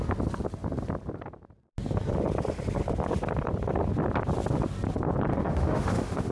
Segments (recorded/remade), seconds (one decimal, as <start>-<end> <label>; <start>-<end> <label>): 0.0-5.3 recorded; 5.3-6.3 remade